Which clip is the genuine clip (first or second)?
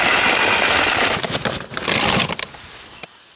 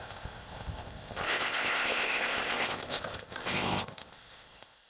first